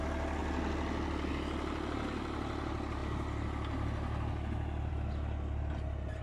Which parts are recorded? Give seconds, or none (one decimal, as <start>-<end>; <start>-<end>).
0.0-6.2